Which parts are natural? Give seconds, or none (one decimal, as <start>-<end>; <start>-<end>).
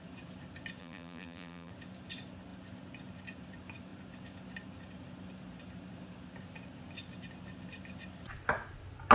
0.0-0.8; 1.7-9.1